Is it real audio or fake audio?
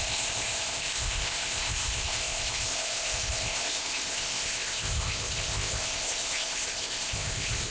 fake